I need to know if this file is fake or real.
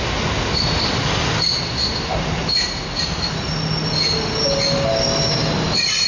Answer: real